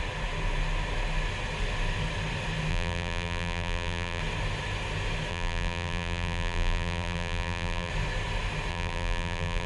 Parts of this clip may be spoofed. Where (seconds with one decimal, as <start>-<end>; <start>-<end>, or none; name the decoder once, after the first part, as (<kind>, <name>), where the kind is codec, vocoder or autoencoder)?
2.7-4.2 (vocoder, BigVGAN v2); 5.3-7.9; 8.7-9.7